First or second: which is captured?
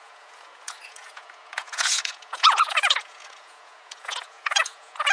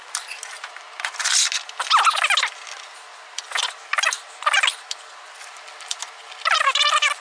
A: second